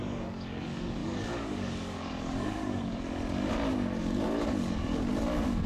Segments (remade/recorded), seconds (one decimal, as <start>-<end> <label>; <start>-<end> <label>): 0.0-5.7 remade